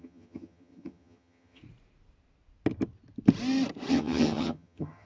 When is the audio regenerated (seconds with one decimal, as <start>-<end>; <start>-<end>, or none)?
0.0-1.6; 3.9-5.1

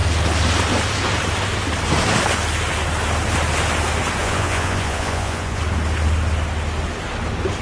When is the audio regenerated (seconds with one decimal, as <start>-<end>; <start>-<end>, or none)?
4.2-5.6

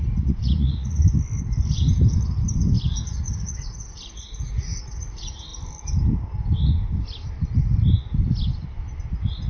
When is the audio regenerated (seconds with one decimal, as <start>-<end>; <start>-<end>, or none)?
0.0-1.0; 3.0-5.5; 9.1-9.5

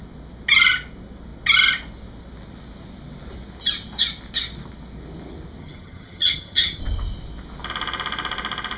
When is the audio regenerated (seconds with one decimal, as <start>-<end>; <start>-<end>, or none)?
5.6-6.8